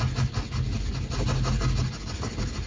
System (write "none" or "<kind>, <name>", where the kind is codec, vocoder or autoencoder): none